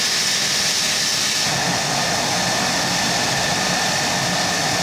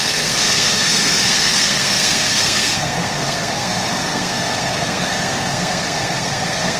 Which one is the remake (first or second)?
second